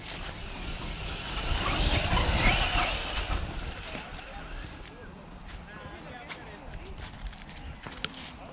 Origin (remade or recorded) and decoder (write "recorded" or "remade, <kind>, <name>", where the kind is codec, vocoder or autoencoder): recorded